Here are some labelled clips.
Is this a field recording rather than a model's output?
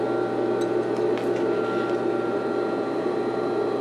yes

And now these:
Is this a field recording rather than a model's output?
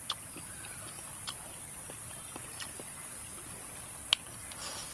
yes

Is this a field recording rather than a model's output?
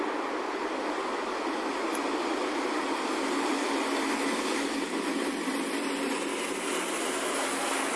yes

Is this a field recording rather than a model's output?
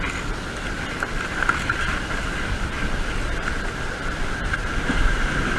yes